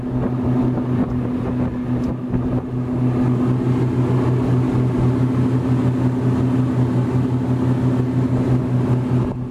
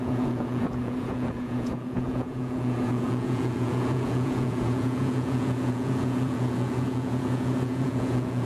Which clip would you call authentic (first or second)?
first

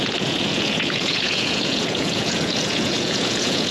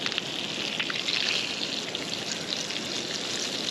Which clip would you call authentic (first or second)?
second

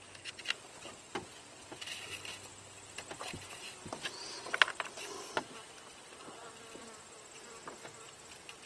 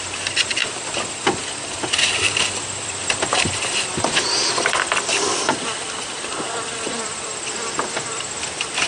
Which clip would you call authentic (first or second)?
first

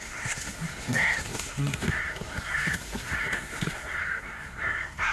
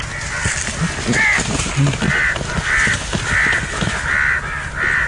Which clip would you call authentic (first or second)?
second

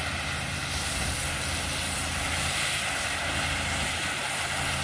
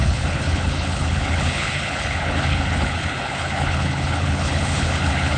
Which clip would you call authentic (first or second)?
first